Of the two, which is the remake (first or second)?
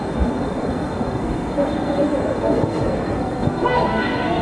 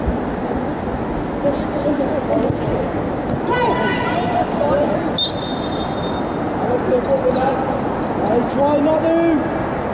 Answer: first